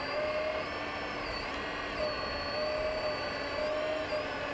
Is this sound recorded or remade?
recorded